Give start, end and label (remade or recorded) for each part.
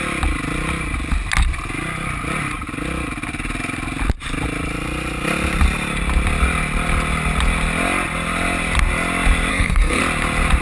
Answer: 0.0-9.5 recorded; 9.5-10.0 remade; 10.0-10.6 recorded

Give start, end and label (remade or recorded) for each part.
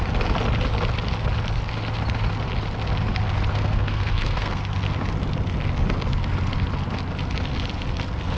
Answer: 0.0-3.5 recorded; 3.5-4.6 remade; 4.6-8.4 recorded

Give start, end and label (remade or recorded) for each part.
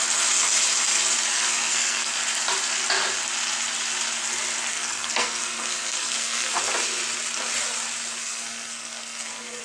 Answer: 0.0-1.3 recorded; 1.3-2.1 remade; 2.1-4.7 recorded; 4.7-6.6 remade; 6.6-8.2 recorded; 8.2-9.6 remade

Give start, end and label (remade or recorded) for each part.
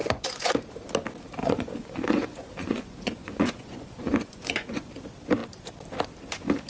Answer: 0.0-0.5 remade; 0.5-1.4 recorded; 1.4-4.9 remade; 4.9-6.7 recorded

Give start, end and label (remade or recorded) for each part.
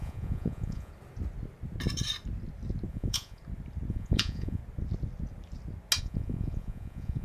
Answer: 0.0-0.9 remade; 0.9-2.9 recorded; 2.9-3.4 remade; 3.4-3.9 recorded; 3.9-4.6 remade; 4.6-6.0 recorded; 6.0-7.2 remade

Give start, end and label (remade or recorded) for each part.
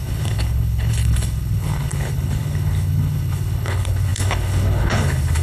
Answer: 0.0-5.4 remade